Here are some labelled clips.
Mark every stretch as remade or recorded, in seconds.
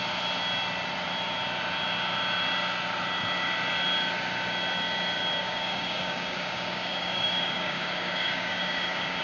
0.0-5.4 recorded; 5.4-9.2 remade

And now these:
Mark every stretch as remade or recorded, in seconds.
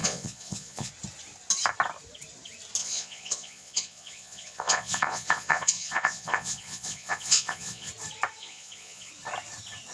0.0-0.9 remade; 0.9-2.8 recorded; 2.8-7.9 remade; 7.9-8.4 recorded; 8.4-9.1 remade; 9.1-9.9 recorded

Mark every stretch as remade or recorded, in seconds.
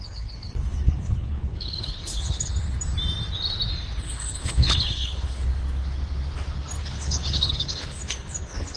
0.0-2.5 remade; 2.5-4.0 recorded; 4.0-5.5 remade; 5.5-6.8 recorded; 6.8-8.8 remade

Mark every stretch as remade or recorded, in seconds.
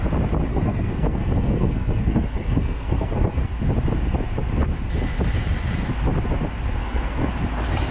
0.0-0.5 recorded; 0.5-3.5 remade; 3.5-6.8 recorded; 6.8-7.3 remade; 7.3-7.9 recorded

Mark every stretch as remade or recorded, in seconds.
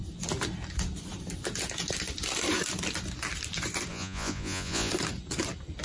0.0-3.9 recorded; 3.9-4.9 remade; 4.9-5.8 recorded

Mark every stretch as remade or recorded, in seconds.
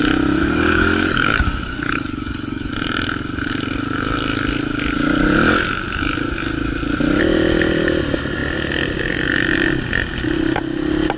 0.0-0.4 recorded; 0.4-2.7 remade; 2.7-11.2 recorded